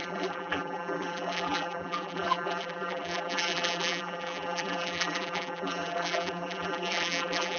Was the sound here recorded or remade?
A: remade